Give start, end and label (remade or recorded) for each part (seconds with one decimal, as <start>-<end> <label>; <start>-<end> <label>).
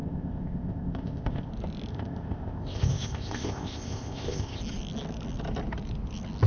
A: 0.0-1.5 remade; 1.5-1.9 recorded; 1.9-4.6 remade; 4.6-6.5 recorded